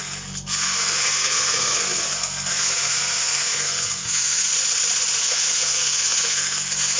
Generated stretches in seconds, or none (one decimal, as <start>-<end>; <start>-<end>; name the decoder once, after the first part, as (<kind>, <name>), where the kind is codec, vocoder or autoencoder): 0.0-4.5 (codec, SNAC); 5.2-7.0